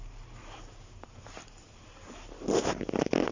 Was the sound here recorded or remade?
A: recorded